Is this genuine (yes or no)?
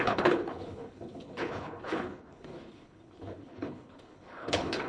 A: no